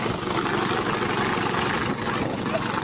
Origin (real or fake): real